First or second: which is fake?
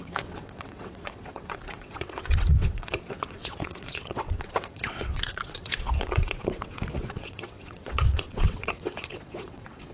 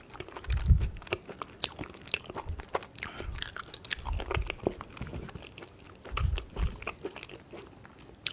first